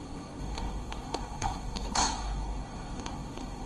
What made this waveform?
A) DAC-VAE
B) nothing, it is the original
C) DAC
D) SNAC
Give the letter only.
D